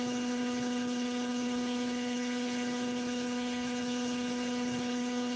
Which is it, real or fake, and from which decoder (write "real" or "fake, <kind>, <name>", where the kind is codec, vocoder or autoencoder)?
fake, codec, HILCodec